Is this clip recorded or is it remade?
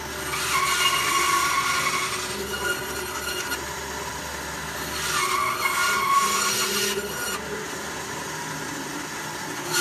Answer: recorded